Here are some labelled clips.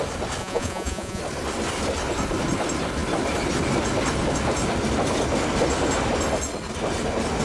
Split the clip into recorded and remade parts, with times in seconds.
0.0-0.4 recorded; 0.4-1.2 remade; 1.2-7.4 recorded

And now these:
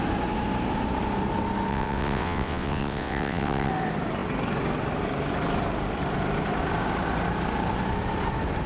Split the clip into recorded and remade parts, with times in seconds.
0.0-1.7 recorded; 1.7-3.7 remade; 3.7-8.7 recorded